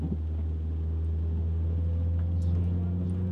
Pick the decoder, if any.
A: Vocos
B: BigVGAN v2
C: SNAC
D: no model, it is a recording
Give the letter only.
D